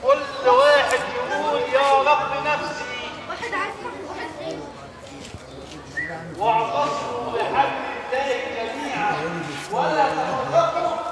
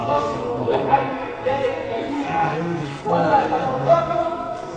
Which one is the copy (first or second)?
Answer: second